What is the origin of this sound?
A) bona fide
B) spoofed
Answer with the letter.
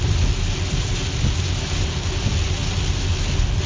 A